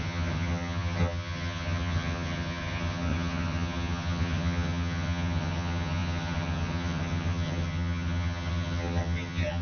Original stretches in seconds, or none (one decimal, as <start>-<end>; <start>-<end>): none